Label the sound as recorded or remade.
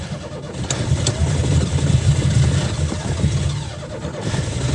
recorded